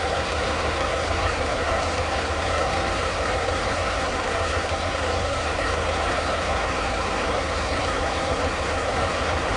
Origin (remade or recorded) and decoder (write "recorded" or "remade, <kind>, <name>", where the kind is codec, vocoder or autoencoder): remade, codec, SNAC